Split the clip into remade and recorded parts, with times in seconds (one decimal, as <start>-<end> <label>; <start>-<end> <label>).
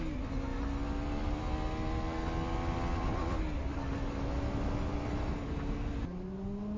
0.0-6.8 recorded